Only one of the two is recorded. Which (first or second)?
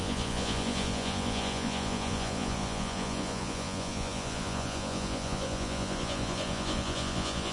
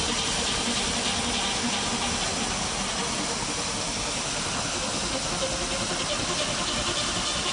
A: second